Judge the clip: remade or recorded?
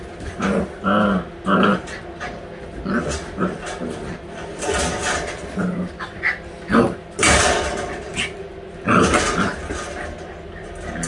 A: recorded